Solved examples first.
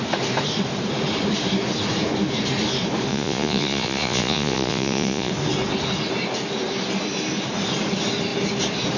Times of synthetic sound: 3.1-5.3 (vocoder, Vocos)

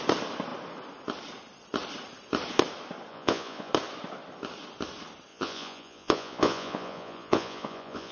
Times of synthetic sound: 3.1-3.7 (vocoder, Vocos); 5.3-8.1